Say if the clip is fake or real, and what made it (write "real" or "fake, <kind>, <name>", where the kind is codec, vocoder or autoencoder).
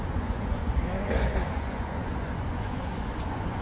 fake, vocoder, Vocos